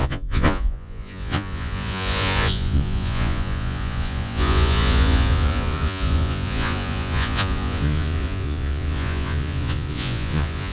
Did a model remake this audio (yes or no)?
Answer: yes